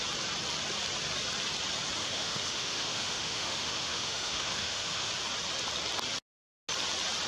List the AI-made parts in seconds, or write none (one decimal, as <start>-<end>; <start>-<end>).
2.0-5.1